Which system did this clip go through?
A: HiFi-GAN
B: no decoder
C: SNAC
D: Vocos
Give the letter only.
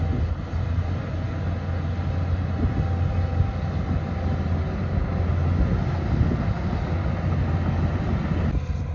B